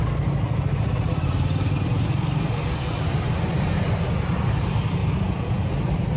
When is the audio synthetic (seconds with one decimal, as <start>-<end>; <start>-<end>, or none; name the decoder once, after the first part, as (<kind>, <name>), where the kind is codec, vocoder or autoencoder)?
5.0-5.7 (vocoder, Vocos)